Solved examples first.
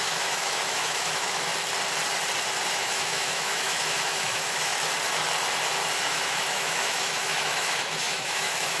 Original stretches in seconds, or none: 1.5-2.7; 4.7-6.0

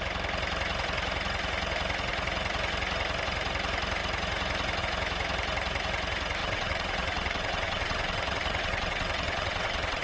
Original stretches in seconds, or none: 0.0-6.4

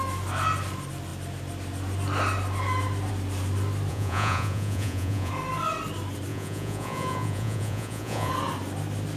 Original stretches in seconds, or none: 0.0-3.9; 5.3-6.3; 8.3-9.2

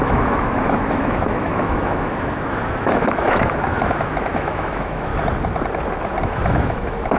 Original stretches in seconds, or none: 5.1-6.2